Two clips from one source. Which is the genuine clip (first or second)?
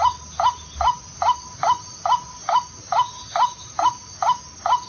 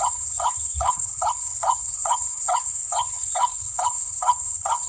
first